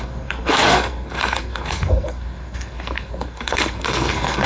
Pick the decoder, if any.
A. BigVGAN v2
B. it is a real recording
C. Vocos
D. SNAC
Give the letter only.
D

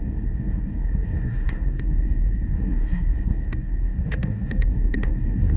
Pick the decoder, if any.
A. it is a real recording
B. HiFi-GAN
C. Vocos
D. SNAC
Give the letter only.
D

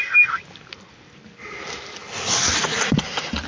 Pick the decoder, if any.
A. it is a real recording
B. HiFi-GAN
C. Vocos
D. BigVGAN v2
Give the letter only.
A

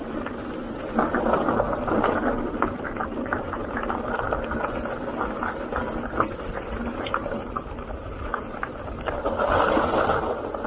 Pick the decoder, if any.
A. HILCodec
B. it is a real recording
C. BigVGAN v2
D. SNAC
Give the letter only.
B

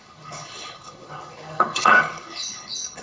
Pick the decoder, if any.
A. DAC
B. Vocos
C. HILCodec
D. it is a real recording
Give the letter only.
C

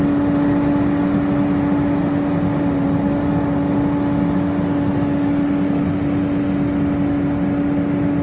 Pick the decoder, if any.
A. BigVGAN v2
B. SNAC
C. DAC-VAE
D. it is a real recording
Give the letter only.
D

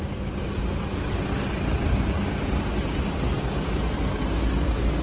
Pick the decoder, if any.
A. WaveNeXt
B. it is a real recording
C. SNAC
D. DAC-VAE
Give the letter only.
B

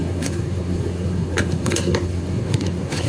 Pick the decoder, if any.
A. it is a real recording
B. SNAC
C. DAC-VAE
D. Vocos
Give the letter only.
B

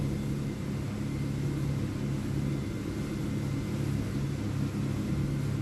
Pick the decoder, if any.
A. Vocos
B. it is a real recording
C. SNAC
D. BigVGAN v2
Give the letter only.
B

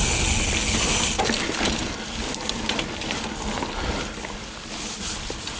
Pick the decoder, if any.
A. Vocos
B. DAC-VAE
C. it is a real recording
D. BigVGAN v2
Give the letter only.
C